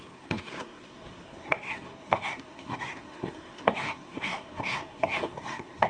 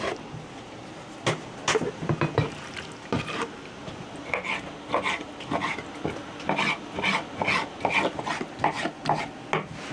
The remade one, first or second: first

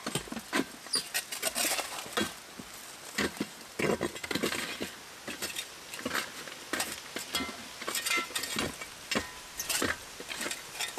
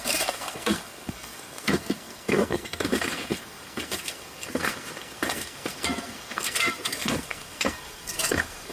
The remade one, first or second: second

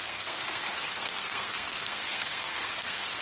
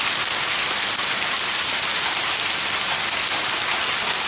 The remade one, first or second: first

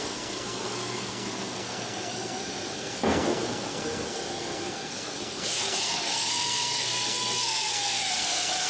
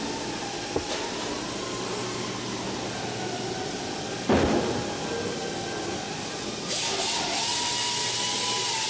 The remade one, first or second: first